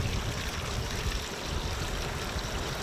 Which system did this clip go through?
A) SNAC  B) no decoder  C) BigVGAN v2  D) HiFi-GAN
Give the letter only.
B